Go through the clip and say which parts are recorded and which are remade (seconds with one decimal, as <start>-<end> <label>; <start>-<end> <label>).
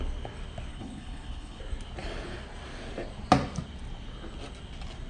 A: 0.0-0.7 recorded; 0.7-1.6 remade; 1.6-5.1 recorded